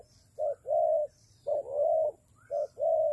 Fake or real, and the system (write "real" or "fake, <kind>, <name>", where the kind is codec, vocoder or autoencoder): real